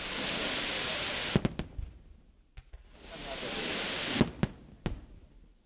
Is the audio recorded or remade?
recorded